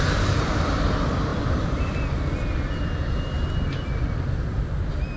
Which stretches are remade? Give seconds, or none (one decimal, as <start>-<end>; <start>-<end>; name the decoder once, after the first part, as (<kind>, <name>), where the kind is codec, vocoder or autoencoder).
none

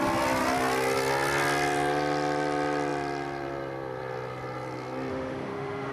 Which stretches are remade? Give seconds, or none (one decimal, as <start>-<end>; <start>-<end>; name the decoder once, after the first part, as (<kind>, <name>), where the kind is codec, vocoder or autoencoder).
5.1-5.9 (autoencoder, DAC-VAE)

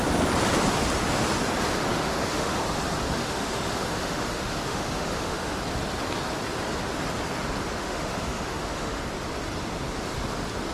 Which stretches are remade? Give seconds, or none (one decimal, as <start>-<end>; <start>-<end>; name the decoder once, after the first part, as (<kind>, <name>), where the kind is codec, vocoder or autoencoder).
1.9-2.6 (autoencoder, DAC-VAE); 3.2-5.6; 7.8-9.0

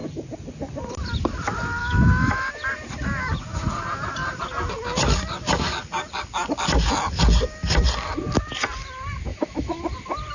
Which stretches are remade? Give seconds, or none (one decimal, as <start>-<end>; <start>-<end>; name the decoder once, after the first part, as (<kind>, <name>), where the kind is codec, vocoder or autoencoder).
1.8-2.5 (autoencoder, DAC-VAE); 9.3-9.8

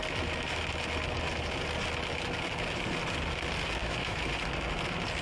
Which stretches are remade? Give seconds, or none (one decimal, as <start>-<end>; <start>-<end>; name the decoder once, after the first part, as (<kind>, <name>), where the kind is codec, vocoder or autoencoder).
3.8-4.3 (autoencoder, DAC-VAE)

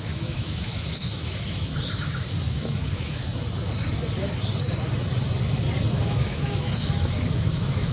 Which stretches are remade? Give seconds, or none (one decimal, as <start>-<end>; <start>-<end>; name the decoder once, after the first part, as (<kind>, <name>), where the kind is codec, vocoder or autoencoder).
0.0-1.7 (autoencoder, DAC-VAE); 2.5-3.3; 5.9-7.9

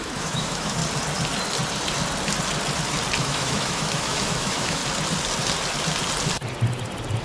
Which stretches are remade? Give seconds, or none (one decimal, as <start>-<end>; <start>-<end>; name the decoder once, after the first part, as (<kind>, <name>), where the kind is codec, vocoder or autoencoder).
0.0-0.8 (autoencoder, DAC-VAE); 3.2-4.8

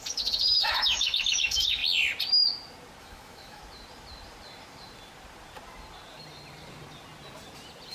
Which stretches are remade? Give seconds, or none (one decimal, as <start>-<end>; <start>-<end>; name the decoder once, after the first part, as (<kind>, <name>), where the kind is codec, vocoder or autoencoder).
0.0-1.8 (autoencoder, DAC-VAE); 3.0-3.6